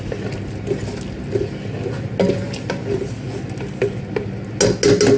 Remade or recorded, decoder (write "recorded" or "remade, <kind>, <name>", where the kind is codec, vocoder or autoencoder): recorded